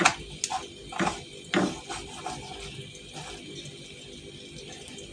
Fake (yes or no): no